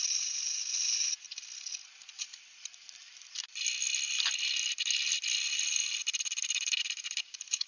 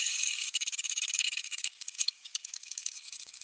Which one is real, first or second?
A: first